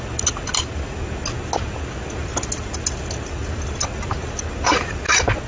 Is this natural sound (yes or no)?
yes